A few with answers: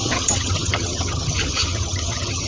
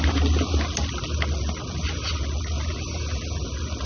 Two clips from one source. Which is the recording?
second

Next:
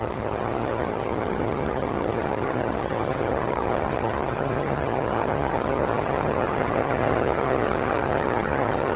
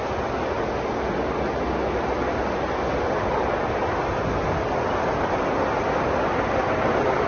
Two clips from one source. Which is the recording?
second